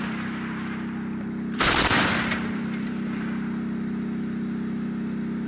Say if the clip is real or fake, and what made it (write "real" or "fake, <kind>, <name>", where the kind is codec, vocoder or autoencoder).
fake, vocoder, BigVGAN v2